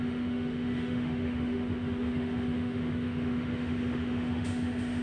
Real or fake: fake